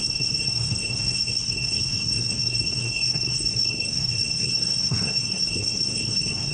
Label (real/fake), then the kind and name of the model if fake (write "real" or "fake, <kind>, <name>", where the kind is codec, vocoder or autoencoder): fake, codec, SNAC